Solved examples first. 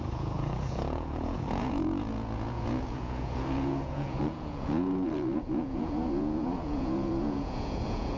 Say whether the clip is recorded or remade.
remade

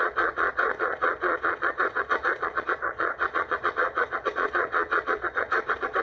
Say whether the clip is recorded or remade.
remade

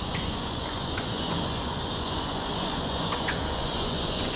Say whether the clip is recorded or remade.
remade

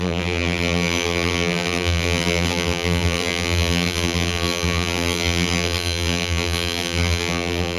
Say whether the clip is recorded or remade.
remade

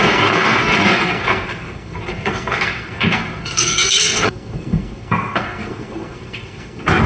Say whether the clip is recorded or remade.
remade